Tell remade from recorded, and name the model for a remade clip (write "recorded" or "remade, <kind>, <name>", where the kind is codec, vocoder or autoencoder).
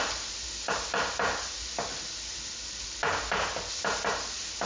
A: recorded